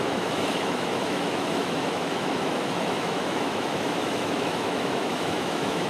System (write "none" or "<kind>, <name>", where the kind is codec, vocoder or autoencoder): autoencoder, DAC-VAE